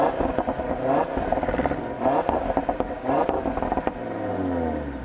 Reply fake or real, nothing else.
real